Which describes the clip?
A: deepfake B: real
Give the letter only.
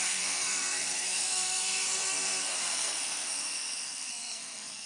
A